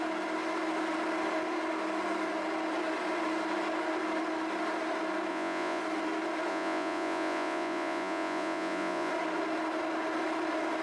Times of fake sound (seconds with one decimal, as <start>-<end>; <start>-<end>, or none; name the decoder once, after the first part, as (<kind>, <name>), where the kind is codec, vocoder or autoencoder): 5.3-5.8 (vocoder, Vocos); 6.5-9.1